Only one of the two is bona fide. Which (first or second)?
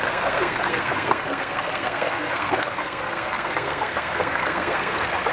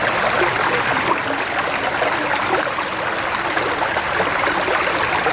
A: second